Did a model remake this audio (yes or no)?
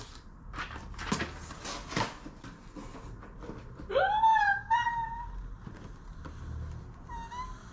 no